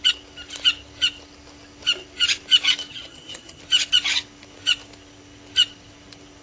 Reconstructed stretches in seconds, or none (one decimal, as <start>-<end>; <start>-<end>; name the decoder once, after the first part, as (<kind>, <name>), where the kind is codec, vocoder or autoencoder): 2.9-3.6 (vocoder, HiFi-GAN)